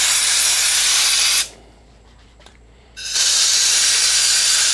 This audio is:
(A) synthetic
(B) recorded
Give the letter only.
A